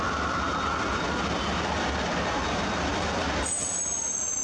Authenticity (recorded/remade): recorded